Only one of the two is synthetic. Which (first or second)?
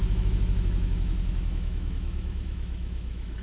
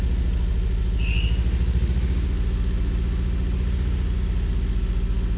first